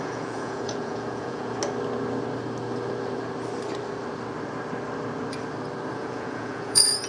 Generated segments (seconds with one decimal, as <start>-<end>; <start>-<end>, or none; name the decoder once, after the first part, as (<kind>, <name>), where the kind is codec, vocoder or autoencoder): 0.0-1.6 (vocoder, Vocos); 5.9-7.1